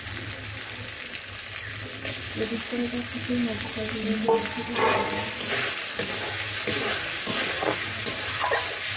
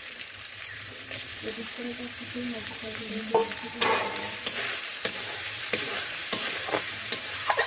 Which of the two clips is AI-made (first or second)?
second